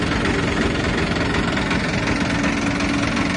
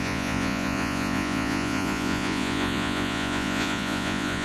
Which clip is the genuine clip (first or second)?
first